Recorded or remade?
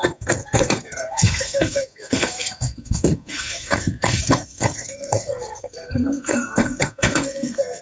remade